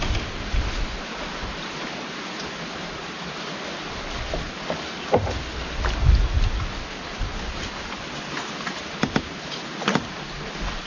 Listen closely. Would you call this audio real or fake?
real